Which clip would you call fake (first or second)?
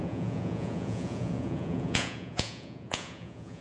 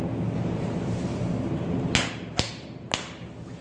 first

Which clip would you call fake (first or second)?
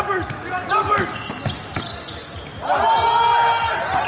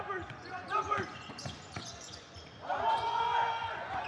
second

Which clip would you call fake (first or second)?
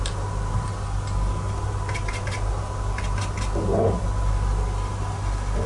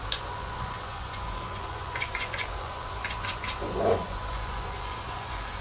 second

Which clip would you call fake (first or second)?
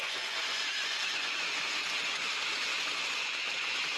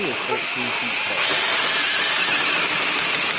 first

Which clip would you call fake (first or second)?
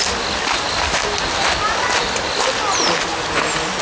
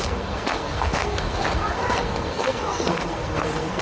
second